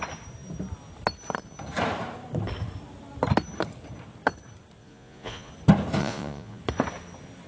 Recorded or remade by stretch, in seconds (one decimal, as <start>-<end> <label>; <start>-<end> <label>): 0.0-4.8 recorded; 4.8-5.5 remade; 5.5-6.0 recorded; 6.0-6.6 remade; 6.6-7.5 recorded